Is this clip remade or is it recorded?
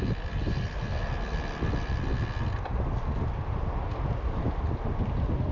recorded